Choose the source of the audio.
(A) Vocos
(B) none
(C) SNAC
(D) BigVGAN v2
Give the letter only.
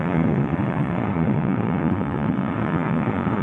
A